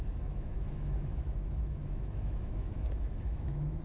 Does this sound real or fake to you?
fake